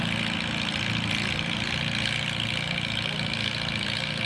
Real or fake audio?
real